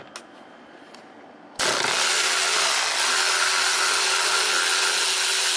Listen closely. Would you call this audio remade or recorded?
recorded